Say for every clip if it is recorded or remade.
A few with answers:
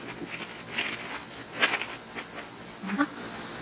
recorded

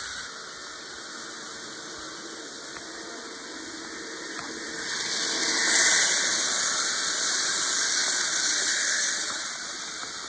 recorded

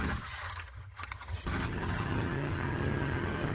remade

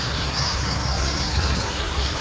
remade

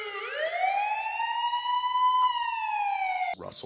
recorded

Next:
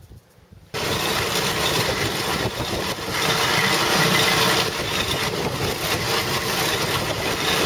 remade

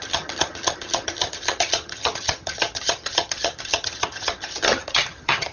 remade